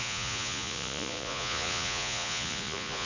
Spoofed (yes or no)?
yes